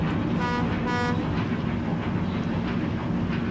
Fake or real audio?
real